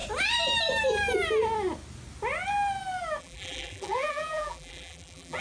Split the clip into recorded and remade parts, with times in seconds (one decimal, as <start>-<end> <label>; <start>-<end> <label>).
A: 0.0-3.2 recorded; 3.2-5.4 remade